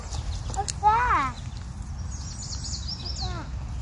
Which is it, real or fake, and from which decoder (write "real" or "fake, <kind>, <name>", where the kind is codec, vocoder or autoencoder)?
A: real